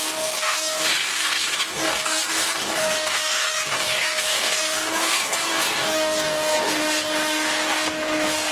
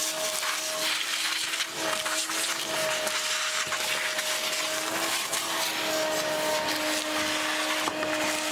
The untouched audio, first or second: second